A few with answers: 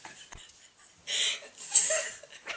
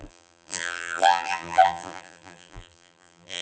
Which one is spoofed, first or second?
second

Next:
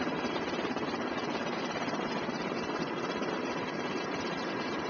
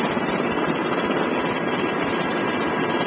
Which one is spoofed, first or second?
first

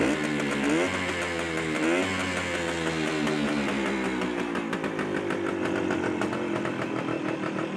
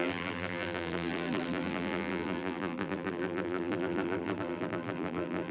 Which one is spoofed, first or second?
second